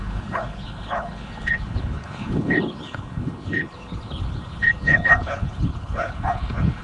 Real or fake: fake